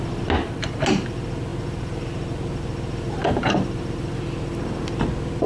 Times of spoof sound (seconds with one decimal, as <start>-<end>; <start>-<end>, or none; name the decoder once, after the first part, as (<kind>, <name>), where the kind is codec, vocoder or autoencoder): none

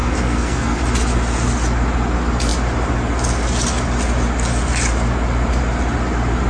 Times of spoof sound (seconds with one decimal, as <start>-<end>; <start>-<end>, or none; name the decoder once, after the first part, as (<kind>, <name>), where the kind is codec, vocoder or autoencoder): 0.0-0.8 (codec, SNAC)

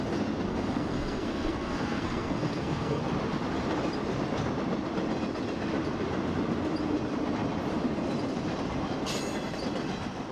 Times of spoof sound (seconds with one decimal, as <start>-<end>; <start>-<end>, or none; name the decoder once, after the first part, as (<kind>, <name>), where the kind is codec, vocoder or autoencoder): 0.5-3.0 (codec, SNAC)

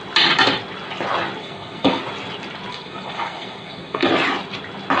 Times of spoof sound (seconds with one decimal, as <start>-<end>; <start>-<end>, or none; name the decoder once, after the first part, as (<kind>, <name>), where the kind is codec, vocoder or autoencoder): 1.4-2.0 (codec, SNAC); 2.7-4.1